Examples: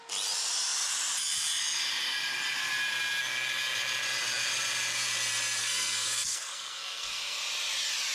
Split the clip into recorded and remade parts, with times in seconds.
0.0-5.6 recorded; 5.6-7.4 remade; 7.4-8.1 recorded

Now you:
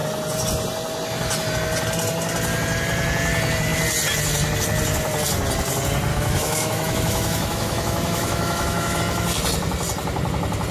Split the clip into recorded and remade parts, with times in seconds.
0.0-6.1 recorded; 6.1-9.0 remade; 9.0-10.7 recorded

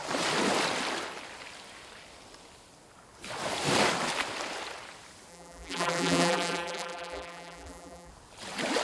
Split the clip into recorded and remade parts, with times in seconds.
0.0-5.3 recorded; 5.3-8.1 remade; 8.1-8.8 recorded

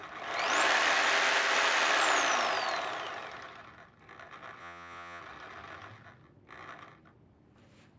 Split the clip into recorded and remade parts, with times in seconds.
0.0-4.6 recorded; 4.6-5.2 remade; 5.2-8.0 recorded

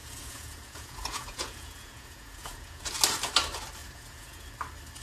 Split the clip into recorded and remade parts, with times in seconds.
0.0-2.8 remade; 2.8-3.8 recorded; 3.8-4.5 remade; 4.5-5.0 recorded

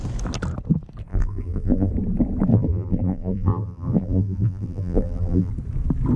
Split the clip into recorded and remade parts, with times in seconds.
0.0-1.1 recorded; 1.1-1.9 remade; 1.9-2.5 recorded; 2.5-5.5 remade; 5.5-6.2 recorded